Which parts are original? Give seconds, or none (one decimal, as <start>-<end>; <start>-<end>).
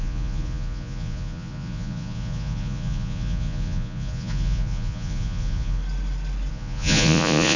5.8-6.5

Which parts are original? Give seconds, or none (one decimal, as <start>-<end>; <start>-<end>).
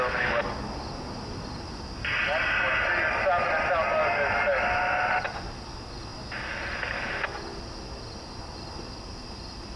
0.0-9.8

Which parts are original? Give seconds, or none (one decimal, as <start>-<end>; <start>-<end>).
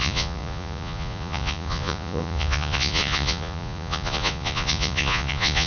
none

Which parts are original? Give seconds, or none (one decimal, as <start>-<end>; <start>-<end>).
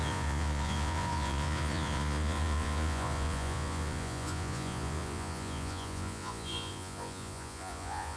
none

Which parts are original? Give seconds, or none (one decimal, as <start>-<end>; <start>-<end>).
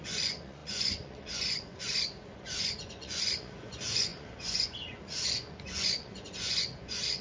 none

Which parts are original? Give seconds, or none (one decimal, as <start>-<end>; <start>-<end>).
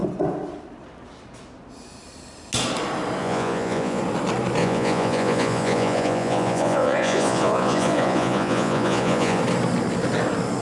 0.0-3.2; 4.0-4.6; 9.4-10.6